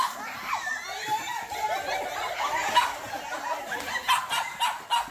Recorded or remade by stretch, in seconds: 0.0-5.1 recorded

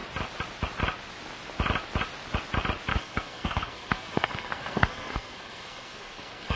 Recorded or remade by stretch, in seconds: 0.0-2.9 recorded; 2.9-6.6 remade

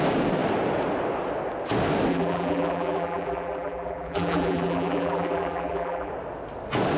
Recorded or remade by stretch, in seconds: 0.0-2.1 recorded; 2.1-6.1 remade; 6.1-7.0 recorded